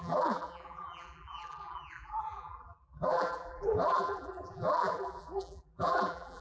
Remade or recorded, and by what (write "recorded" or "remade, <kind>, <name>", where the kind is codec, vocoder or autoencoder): remade, vocoder, BigVGAN v2